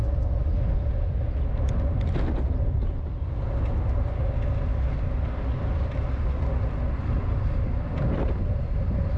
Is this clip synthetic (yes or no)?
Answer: no